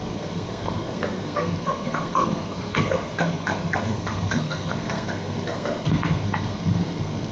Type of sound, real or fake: fake